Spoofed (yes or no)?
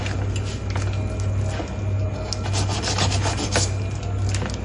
no